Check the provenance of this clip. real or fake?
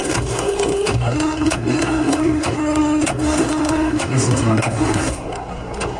fake